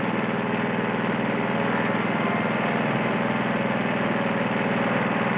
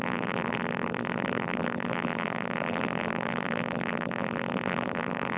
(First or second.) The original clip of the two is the first